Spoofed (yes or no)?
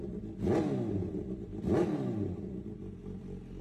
no